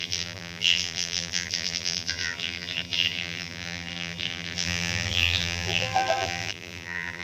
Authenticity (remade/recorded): remade